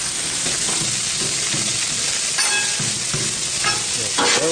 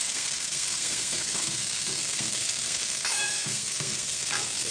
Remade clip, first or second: second